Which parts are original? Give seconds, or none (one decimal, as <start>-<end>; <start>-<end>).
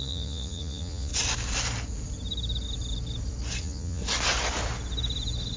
1.1-3.6; 4.0-5.6